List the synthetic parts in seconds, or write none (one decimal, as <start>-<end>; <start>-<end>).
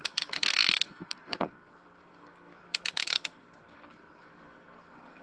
0.0-5.2